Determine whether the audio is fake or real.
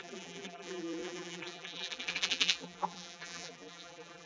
fake